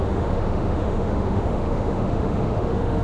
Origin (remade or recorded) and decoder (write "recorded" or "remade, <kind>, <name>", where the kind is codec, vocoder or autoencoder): remade, autoencoder, DAC-VAE